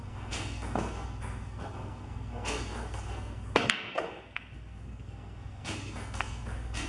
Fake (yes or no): yes